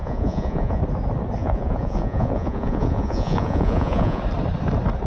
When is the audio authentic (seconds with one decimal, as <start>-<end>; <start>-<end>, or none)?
0.8-1.4; 4.2-5.1